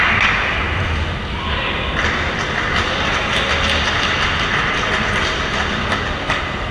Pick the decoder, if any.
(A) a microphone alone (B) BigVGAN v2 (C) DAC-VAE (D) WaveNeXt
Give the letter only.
A